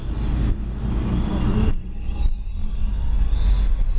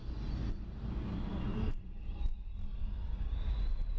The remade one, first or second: second